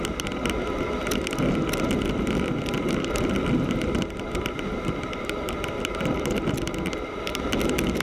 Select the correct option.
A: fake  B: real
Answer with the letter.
B